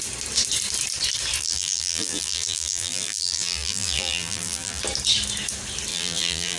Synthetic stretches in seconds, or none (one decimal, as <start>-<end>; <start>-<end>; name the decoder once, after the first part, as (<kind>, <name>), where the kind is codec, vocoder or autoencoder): 1.4-4.8 (vocoder, BigVGAN v2); 5.9-6.6

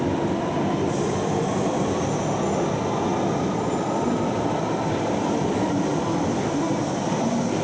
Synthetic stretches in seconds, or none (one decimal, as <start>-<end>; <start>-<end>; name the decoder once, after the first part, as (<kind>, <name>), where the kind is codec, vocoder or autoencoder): none